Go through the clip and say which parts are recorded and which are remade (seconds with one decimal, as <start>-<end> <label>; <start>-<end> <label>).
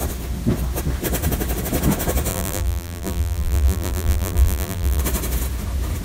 0.0-2.3 recorded; 2.3-5.0 remade; 5.0-6.0 recorded